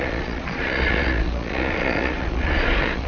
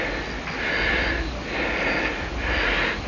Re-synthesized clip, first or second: first